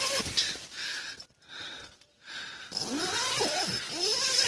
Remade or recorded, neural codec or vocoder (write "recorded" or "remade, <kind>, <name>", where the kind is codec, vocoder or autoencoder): recorded